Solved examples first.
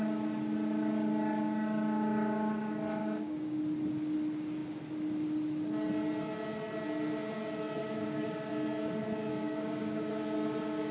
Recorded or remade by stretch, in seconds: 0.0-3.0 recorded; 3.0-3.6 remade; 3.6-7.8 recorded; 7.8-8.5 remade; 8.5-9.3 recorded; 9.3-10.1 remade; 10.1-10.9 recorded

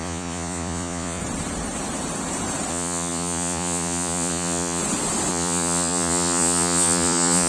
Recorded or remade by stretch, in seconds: 0.0-1.2 remade; 1.2-2.7 recorded; 2.7-4.8 remade; 4.8-5.3 recorded; 5.3-7.5 remade

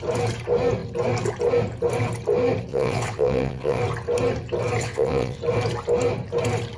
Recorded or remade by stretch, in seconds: 0.0-2.7 recorded; 2.7-3.8 remade; 3.8-4.8 recorded; 4.8-5.4 remade; 5.4-6.8 recorded

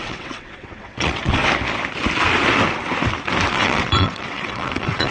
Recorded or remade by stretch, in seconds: 0.0-1.4 remade; 1.4-3.5 recorded; 3.5-5.1 remade

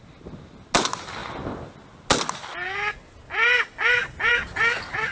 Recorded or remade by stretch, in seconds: 0.0-5.1 recorded

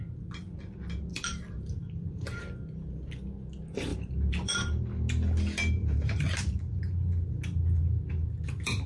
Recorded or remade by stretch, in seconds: 0.0-1.1 recorded; 1.1-2.4 remade; 2.4-3.9 recorded; 3.9-4.8 remade; 4.8-5.8 recorded; 5.8-6.8 remade; 6.8-8.9 recorded